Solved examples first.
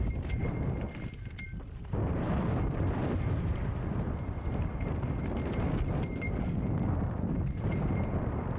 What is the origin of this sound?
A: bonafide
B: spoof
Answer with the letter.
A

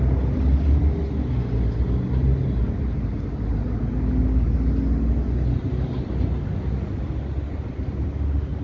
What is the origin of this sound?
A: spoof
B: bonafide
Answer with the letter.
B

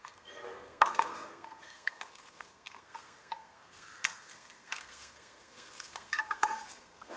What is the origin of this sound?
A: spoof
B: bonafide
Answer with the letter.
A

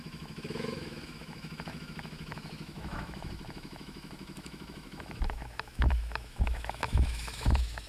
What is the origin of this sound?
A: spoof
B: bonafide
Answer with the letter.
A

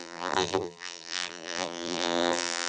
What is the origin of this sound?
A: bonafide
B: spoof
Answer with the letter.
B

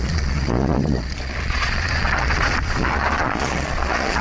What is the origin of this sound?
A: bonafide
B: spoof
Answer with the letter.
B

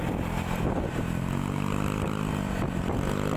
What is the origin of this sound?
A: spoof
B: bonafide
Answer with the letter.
B